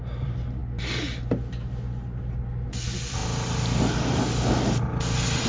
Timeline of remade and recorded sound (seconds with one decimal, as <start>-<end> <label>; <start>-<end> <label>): 0.0-5.5 recorded